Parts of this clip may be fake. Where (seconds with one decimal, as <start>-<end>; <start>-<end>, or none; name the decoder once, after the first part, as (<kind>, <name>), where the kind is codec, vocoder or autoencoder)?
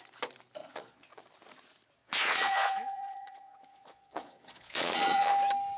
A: 0.6-1.2 (vocoder, Vocos); 2.0-5.3